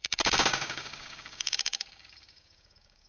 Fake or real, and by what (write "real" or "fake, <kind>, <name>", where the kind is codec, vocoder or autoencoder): fake, codec, DAC